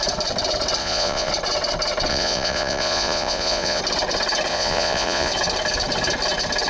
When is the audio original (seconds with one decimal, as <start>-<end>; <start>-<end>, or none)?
0.0-0.8; 1.3-2.1; 3.8-4.5; 5.3-6.7